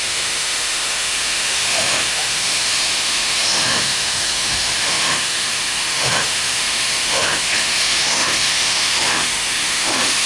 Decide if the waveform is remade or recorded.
remade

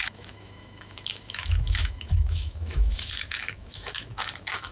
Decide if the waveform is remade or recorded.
remade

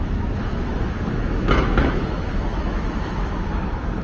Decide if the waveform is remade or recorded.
remade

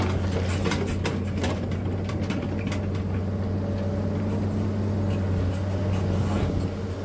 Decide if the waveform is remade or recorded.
recorded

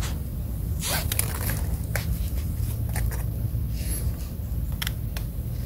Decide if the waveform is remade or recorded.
recorded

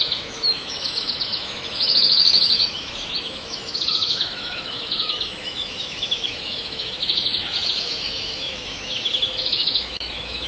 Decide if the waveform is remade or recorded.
remade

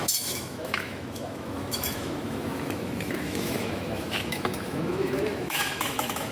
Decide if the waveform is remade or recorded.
remade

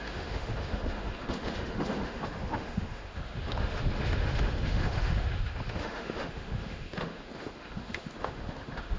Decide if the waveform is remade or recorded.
remade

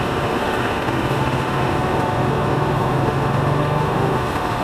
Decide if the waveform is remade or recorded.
remade